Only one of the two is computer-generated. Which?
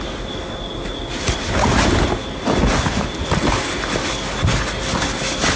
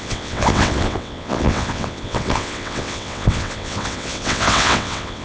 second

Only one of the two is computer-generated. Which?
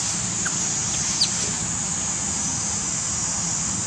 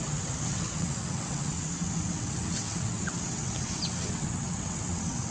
second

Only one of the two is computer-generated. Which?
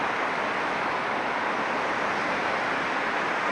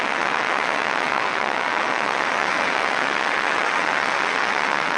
second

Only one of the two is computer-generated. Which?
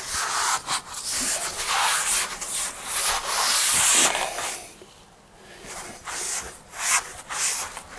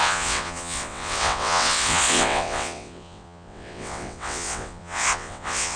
second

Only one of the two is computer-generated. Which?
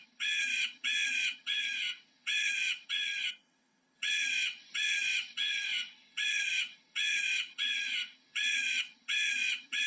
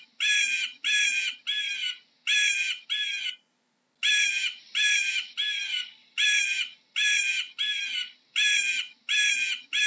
first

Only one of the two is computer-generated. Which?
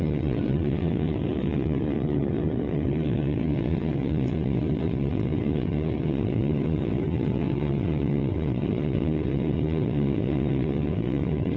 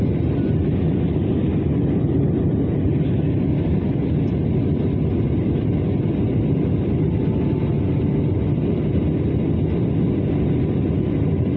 first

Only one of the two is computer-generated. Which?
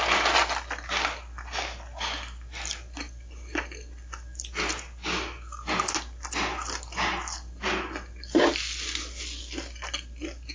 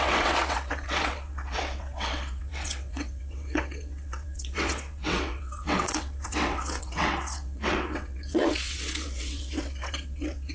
second